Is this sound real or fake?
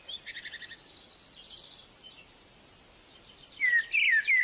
real